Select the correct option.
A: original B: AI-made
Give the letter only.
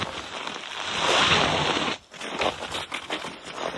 A